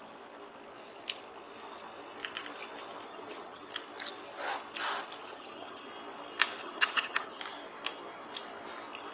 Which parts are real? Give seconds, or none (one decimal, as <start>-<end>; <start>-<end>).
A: 0.0-3.1; 3.7-5.2; 5.9-6.6; 7.4-9.1